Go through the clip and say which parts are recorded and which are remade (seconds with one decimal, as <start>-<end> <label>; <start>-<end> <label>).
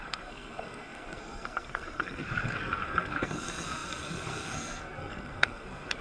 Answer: 0.0-6.0 remade